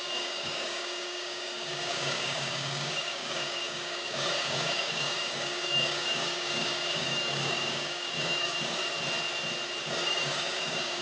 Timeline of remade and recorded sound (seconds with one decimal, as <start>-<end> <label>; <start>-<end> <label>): 0.0-8.8 remade; 8.8-9.8 recorded; 9.8-11.0 remade